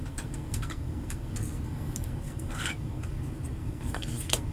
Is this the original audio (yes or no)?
no